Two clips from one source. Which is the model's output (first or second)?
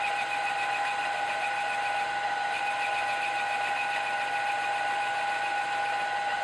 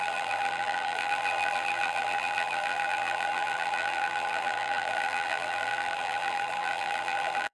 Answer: second